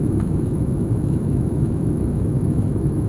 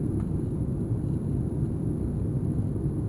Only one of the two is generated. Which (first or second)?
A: first